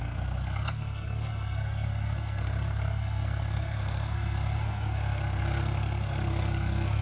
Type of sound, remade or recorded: remade